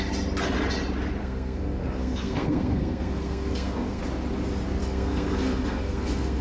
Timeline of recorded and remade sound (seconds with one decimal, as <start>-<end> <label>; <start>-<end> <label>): 0.0-1.2 recorded; 1.2-4.0 remade; 4.0-4.8 recorded; 4.8-6.4 remade